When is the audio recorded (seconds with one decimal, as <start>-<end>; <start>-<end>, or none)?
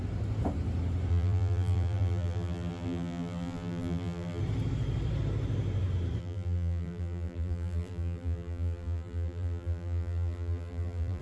0.0-1.1; 4.4-6.2